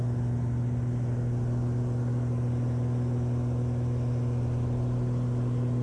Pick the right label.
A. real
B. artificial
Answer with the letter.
A